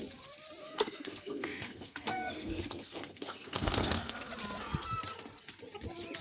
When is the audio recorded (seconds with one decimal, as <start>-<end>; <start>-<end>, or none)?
0.0-0.6; 4.3-6.2